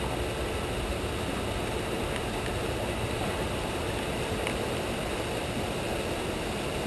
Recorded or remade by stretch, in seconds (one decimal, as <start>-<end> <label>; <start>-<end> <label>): 0.0-0.9 recorded; 0.9-4.1 remade; 4.1-6.9 recorded